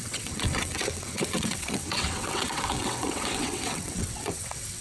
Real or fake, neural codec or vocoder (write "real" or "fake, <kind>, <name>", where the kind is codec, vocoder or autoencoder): fake, vocoder, WaveNeXt